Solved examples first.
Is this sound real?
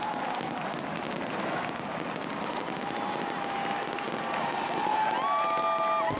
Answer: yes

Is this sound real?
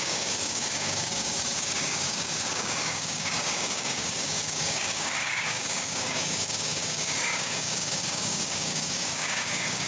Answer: no